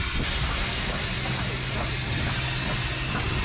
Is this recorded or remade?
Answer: recorded